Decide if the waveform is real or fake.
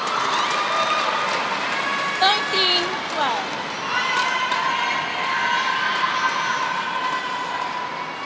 real